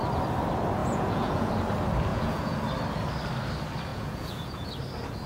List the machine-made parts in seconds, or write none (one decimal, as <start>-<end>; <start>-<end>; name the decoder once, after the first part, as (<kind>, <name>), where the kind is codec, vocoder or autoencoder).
0.8-1.5 (vocoder, Vocos); 2.1-2.6; 3.9-4.7